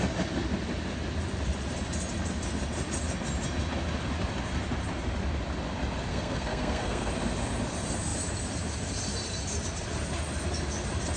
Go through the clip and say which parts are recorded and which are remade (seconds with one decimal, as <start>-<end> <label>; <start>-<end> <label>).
0.0-6.1 recorded; 6.1-7.1 remade; 7.1-11.2 recorded

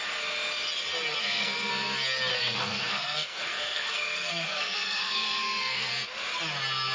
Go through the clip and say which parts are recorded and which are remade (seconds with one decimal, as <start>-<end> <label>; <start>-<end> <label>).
0.0-1.2 recorded; 1.2-1.7 remade; 1.7-2.3 recorded; 2.3-5.9 remade; 5.9-6.9 recorded

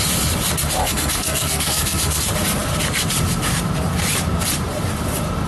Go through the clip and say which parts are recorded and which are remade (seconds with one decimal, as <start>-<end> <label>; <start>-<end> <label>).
0.0-0.8 recorded; 0.8-2.2 remade; 2.2-5.5 recorded

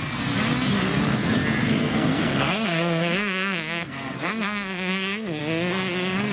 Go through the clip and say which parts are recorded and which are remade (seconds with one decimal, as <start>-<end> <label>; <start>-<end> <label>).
0.0-1.6 recorded; 1.6-5.4 remade; 5.4-6.3 recorded

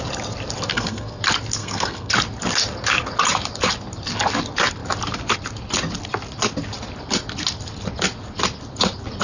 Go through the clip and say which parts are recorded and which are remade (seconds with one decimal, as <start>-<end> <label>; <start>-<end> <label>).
0.0-0.7 recorded; 0.7-1.2 remade; 1.2-1.6 recorded; 1.6-2.1 remade; 2.1-9.2 recorded

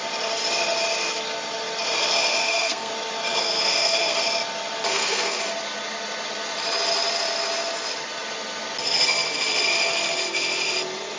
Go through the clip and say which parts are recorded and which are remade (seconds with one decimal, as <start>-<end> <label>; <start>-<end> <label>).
0.0-2.4 recorded; 2.4-2.9 remade; 2.9-3.4 recorded; 3.4-4.2 remade; 4.2-4.9 recorded; 4.9-5.4 remade; 5.4-11.2 recorded

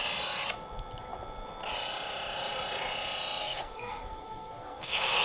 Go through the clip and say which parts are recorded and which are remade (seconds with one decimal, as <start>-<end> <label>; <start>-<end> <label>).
0.0-3.4 recorded; 3.4-5.2 remade